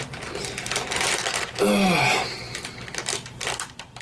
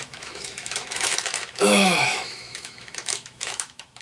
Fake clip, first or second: second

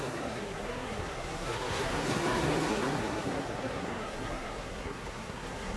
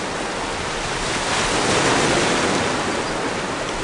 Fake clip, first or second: first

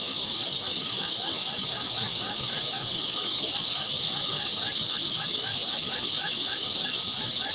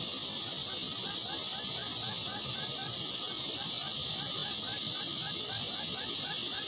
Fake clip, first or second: first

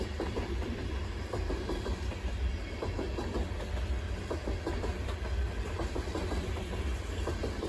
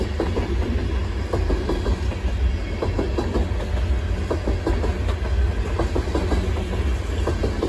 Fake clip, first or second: first